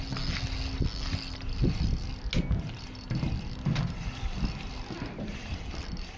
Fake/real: real